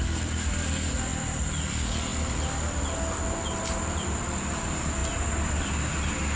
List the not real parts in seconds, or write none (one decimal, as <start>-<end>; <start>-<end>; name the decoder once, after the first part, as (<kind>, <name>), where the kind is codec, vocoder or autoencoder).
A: none